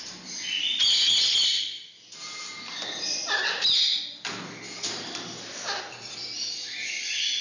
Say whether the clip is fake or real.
real